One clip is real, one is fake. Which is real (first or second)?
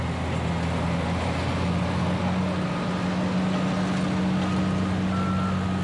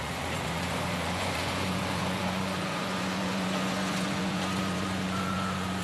first